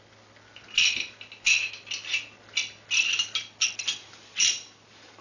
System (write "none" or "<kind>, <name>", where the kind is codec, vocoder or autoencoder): none